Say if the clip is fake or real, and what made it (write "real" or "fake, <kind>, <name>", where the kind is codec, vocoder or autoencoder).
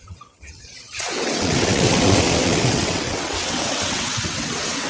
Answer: fake, vocoder, WaveNeXt